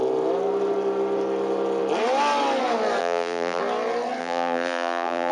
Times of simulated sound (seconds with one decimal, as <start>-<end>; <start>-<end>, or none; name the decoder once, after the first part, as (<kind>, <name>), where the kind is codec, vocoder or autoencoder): 3.0-3.6 (vocoder, BigVGAN v2); 4.2-5.3